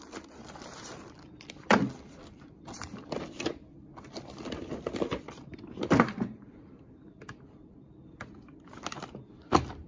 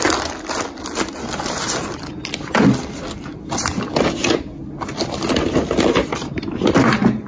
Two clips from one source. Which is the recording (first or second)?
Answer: second